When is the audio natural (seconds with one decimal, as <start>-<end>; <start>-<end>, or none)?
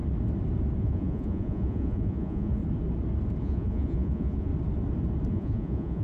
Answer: 0.0-0.8; 2.6-3.4; 4.5-5.3